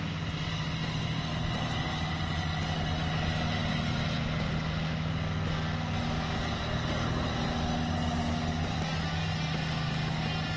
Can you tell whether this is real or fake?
real